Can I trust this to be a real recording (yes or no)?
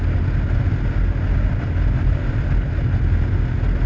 yes